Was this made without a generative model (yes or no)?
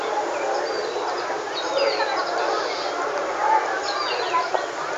yes